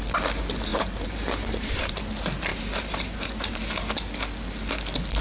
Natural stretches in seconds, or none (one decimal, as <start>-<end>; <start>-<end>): 0.0-0.7; 2.0-2.5; 3.6-5.2